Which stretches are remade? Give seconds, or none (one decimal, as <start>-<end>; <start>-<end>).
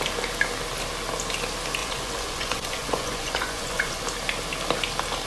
1.8-4.0